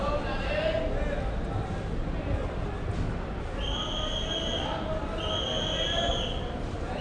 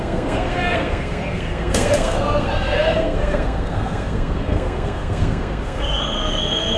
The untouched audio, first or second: first